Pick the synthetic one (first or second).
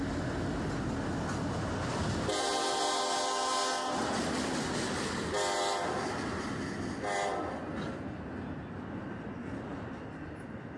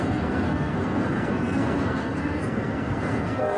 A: second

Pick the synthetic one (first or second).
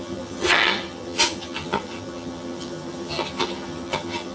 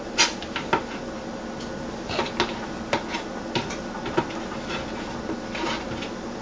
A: first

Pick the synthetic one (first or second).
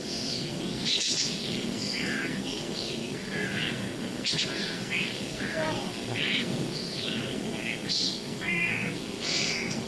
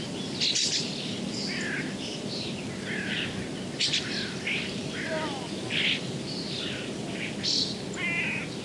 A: first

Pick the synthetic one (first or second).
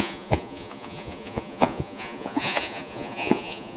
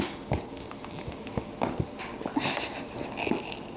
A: first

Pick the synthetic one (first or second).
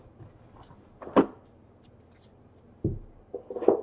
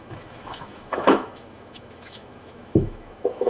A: second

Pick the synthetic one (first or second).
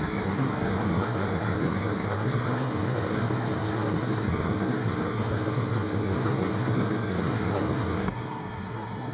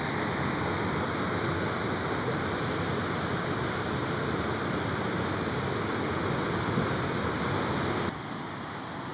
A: first